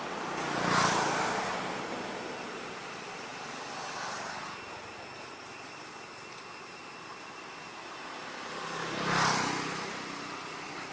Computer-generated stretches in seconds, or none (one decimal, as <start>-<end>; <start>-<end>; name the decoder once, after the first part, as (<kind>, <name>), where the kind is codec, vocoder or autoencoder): none